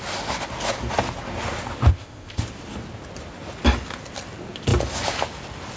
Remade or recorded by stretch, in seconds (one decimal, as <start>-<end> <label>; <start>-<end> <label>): 0.0-1.9 recorded; 1.9-2.4 remade; 2.4-5.8 recorded